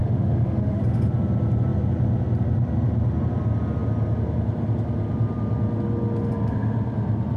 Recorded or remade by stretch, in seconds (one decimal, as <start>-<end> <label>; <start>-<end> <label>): 0.0-0.8 remade; 0.8-7.4 recorded